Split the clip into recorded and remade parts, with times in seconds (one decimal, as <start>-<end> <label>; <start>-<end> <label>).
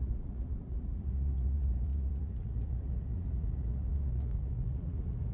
0.0-5.3 remade